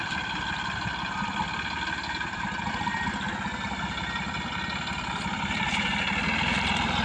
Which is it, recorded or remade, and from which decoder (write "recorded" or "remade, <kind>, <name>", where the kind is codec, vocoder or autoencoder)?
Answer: recorded